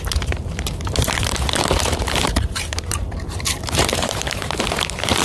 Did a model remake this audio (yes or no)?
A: yes